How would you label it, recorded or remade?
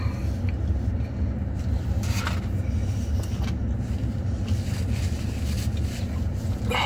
recorded